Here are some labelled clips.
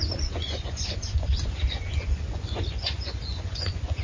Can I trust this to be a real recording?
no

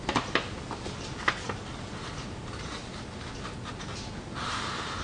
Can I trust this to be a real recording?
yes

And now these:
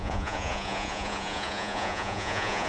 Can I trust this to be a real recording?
no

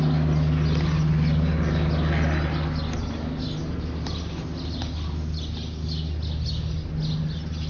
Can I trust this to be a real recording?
yes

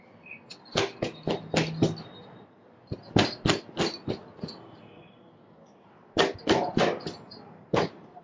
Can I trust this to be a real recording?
yes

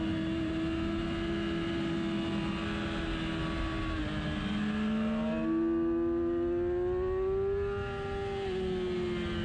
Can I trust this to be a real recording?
yes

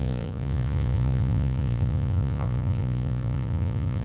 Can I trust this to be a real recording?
no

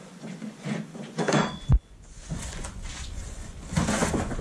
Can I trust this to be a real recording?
no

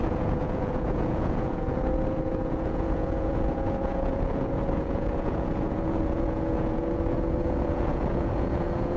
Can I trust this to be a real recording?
no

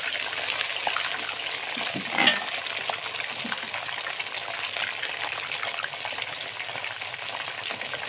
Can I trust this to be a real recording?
yes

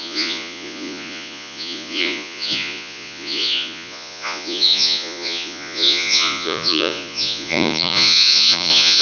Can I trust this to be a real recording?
no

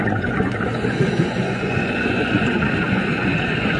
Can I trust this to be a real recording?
no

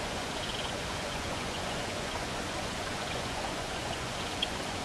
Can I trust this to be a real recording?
no